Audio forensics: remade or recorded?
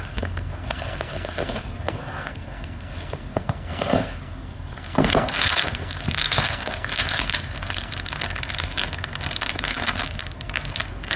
remade